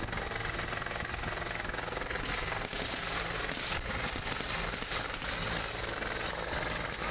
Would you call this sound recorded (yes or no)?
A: yes